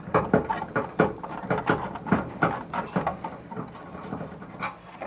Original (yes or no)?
yes